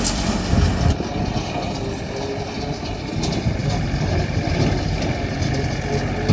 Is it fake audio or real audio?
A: real